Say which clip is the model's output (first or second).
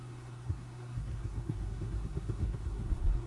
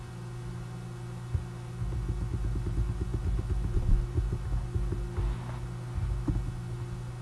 first